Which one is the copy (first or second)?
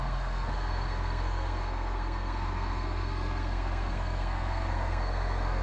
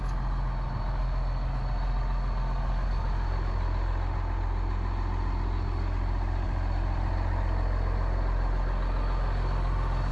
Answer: first